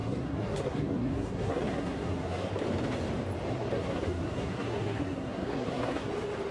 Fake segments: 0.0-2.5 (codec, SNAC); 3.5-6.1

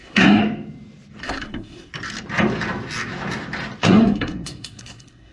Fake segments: 0.0-0.4 (codec, SNAC); 1.2-1.9; 3.8-5.3

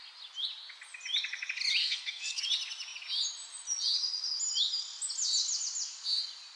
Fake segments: 1.8-2.4 (codec, SNAC)

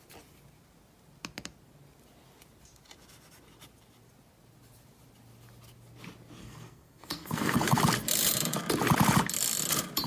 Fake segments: 6.4-7.8 (codec, SNAC)

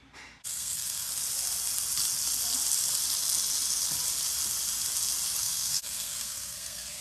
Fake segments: 0.4-1.1 (codec, SNAC); 5.4-7.0

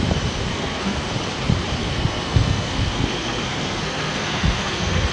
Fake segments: 0.5-1.1 (codec, SNAC); 1.8-5.1

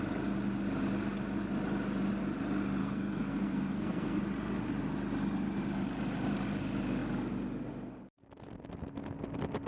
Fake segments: 2.8-4.2 (codec, SNAC)